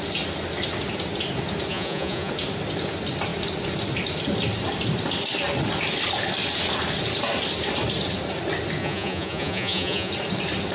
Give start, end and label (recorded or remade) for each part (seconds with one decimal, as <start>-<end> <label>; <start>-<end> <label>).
0.0-1.7 recorded; 1.7-2.3 remade; 2.3-8.8 recorded; 8.8-10.1 remade; 10.1-10.7 recorded